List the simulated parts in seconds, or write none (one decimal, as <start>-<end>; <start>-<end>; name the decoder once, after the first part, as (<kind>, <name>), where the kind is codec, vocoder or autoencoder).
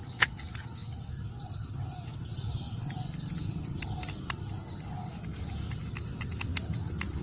none